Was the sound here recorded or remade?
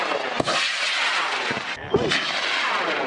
recorded